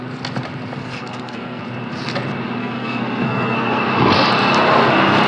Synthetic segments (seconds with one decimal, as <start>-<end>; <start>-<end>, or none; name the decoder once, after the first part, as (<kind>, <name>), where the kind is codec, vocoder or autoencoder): 0.8-1.6 (codec, SNAC); 2.6-3.8